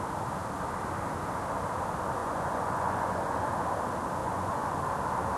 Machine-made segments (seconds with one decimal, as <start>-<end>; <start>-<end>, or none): 2.2-3.5; 4.2-4.8